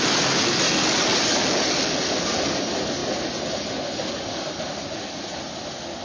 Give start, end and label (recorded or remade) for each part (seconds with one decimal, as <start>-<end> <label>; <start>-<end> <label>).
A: 0.0-3.0 remade; 3.0-4.1 recorded; 4.1-6.0 remade